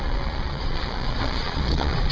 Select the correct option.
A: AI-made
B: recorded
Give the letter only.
A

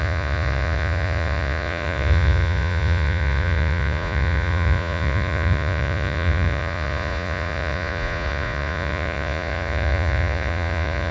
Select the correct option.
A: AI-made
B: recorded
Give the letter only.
A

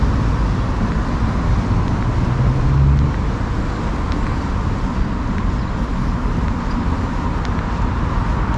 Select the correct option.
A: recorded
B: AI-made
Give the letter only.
A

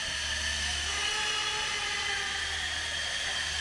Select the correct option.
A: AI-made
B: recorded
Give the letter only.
B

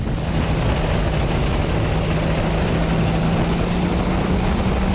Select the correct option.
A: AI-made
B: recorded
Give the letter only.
B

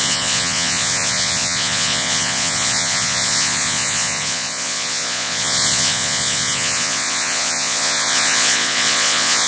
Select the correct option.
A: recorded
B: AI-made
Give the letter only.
B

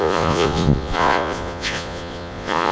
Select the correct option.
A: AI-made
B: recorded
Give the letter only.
A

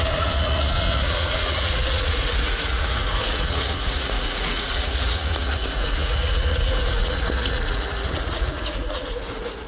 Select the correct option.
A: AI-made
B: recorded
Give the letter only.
A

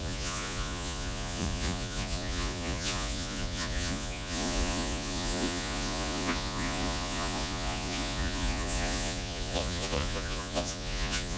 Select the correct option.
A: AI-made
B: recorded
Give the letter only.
A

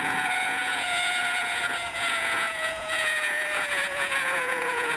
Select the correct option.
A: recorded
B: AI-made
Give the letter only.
B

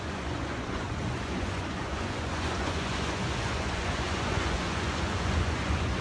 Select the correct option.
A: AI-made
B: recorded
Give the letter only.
A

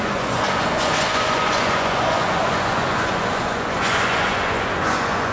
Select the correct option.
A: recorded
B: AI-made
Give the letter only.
B